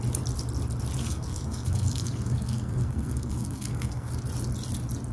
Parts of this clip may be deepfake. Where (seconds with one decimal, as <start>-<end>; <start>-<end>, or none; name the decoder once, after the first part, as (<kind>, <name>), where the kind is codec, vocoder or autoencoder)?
1.0-4.1 (codec, SNAC)